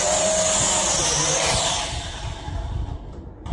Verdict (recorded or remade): recorded